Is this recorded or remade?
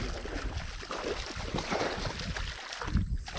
recorded